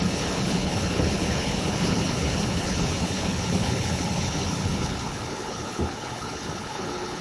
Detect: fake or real fake